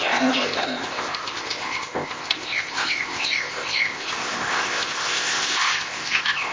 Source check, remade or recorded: remade